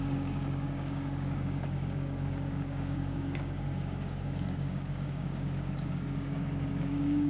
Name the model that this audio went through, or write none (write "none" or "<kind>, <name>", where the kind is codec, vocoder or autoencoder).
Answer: codec, DAC